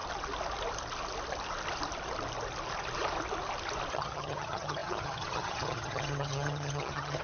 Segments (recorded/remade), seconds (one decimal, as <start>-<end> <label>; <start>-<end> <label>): 0.0-3.9 recorded; 3.9-7.2 remade